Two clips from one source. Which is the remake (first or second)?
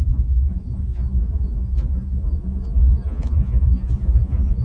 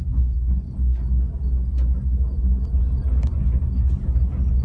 first